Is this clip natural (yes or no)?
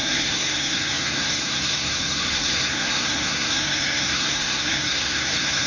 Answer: no